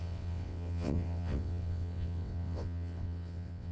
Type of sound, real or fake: fake